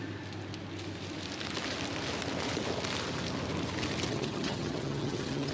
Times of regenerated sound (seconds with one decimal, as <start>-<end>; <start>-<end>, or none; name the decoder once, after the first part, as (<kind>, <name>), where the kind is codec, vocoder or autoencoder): 4.1-5.5 (vocoder, HiFi-GAN)